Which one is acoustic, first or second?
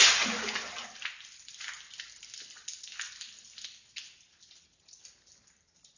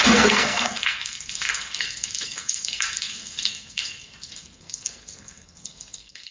first